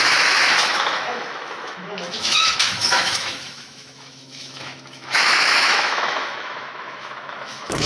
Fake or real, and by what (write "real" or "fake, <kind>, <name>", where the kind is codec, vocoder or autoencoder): fake, autoencoder, DAC-VAE